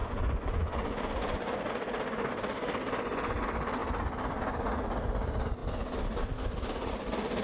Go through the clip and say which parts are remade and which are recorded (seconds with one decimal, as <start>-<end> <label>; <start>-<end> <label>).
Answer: 0.0-1.7 remade; 1.7-7.4 recorded